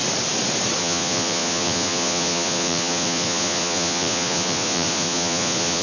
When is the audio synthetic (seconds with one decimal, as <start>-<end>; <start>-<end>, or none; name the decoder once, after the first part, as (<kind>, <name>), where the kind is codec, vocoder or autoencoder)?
0.8-5.8 (vocoder, Vocos)